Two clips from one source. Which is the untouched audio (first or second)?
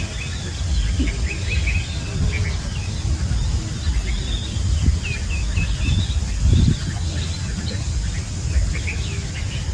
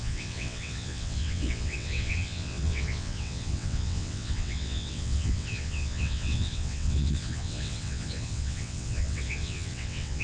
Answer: first